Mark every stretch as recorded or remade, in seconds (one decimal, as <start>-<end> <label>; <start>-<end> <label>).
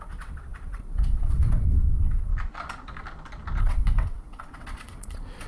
0.0-2.3 remade; 2.3-3.6 recorded; 3.6-5.5 remade